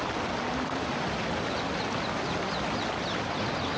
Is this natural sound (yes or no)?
yes